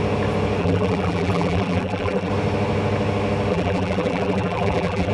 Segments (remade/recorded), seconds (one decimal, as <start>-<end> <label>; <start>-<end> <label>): 0.0-0.6 recorded; 0.6-2.3 remade; 2.3-3.5 recorded; 3.5-5.1 remade